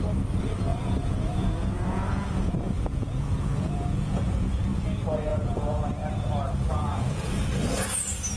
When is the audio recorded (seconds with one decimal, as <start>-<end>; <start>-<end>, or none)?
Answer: 0.0-0.7; 4.6-5.3; 5.8-6.7; 7.3-8.4